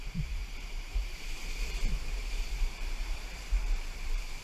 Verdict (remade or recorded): remade